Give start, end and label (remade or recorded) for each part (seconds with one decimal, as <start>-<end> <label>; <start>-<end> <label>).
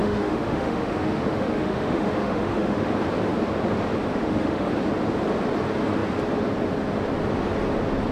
0.0-2.9 remade; 2.9-4.1 recorded; 4.1-4.7 remade; 4.7-8.1 recorded